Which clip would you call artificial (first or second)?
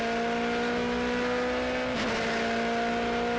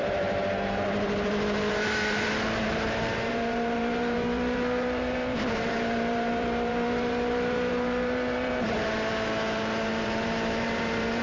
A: second